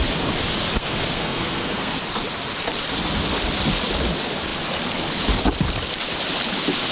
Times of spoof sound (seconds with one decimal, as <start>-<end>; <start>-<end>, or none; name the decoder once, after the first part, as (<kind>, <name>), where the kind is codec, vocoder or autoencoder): 0.8-1.9 (codec, SNAC)